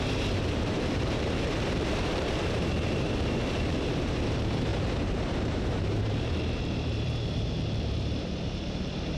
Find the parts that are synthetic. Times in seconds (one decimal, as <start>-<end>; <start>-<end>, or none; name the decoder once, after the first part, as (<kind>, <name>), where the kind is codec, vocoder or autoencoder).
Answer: 0.0-9.2 (vocoder, BigVGAN v2)